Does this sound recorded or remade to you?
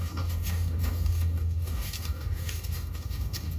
remade